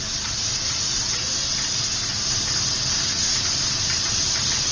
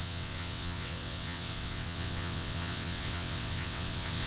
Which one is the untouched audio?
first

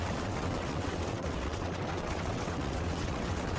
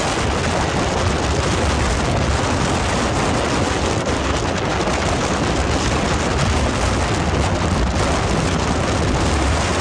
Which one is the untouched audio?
second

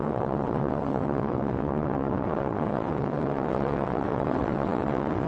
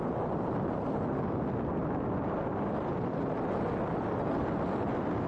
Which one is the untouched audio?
second